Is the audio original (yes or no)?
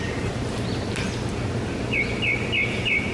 yes